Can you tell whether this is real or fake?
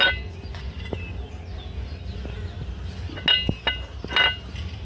real